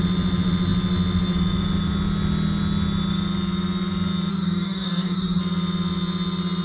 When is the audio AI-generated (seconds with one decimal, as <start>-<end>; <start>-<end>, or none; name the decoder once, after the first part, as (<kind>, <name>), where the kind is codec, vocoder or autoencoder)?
4.3-5.4 (codec, DAC)